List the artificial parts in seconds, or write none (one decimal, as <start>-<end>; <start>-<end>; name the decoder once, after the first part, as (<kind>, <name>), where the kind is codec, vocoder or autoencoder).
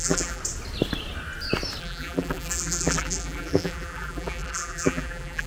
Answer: 0.0-0.4 (vocoder, BigVGAN v2); 1.8-5.5